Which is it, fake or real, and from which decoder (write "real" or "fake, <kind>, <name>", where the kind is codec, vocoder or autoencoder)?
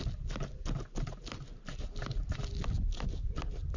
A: real